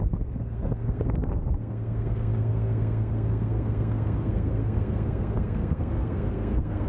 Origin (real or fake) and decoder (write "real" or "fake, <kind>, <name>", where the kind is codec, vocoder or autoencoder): fake, codec, SNAC